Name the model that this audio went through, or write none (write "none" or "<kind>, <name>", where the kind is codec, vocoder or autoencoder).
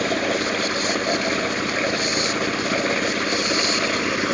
none